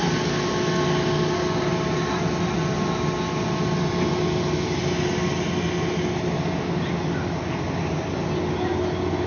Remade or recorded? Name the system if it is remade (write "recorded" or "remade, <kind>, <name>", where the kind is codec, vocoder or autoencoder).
recorded